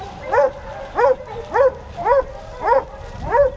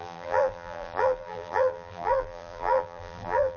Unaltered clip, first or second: first